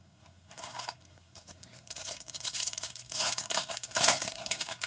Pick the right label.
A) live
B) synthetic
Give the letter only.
B